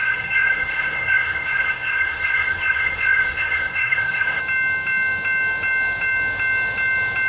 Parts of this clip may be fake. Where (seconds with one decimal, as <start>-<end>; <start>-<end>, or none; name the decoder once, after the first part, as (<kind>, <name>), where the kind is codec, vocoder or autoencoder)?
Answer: 0.0-4.4 (codec, SNAC)